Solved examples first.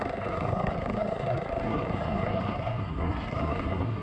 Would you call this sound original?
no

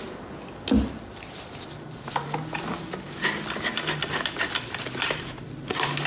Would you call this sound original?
yes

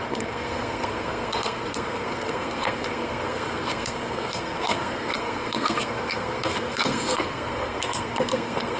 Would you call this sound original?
no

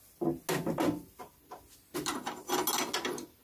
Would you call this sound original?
yes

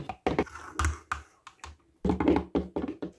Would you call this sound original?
yes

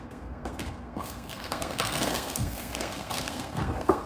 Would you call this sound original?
no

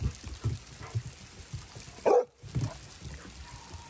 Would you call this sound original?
yes